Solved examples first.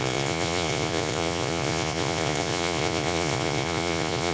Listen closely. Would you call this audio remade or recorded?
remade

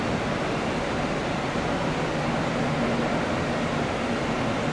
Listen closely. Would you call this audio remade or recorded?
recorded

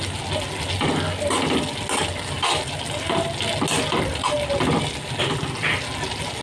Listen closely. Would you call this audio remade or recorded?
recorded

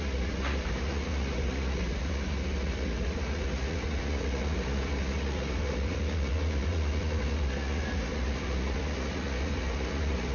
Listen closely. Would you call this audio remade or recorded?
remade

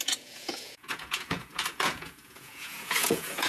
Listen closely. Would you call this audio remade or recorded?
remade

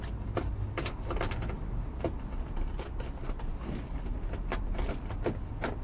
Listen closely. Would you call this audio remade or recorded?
recorded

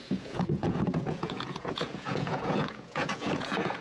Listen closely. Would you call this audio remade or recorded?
remade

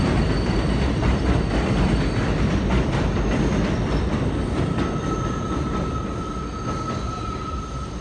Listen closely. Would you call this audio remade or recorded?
recorded